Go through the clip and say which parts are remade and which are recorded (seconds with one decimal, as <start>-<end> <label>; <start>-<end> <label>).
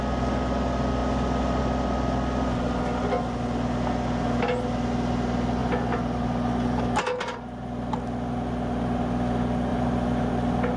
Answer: 0.0-9.7 recorded; 9.7-10.3 remade; 10.3-10.8 recorded